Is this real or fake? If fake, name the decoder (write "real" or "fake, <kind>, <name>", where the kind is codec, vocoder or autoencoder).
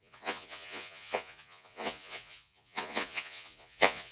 fake, vocoder, Vocos